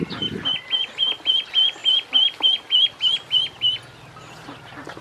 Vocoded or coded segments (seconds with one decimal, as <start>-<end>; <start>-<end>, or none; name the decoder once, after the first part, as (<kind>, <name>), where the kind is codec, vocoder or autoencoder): none